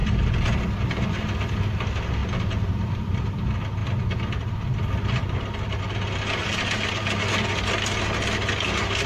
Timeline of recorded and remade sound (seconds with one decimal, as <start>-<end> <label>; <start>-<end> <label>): 0.0-0.6 remade; 0.6-2.2 recorded; 2.2-3.4 remade; 3.4-9.1 recorded